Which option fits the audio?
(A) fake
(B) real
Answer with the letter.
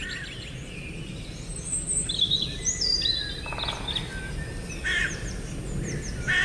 B